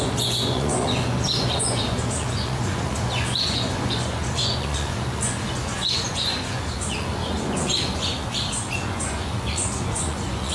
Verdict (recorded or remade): remade